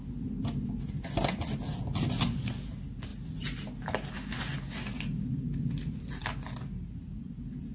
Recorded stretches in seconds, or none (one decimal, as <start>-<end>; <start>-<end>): 0.0-7.7